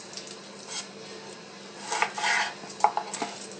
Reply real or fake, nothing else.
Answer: real